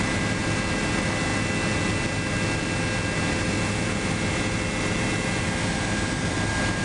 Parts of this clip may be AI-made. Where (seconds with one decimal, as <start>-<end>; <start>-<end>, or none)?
none